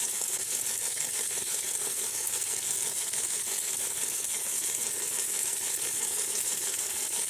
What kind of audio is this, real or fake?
fake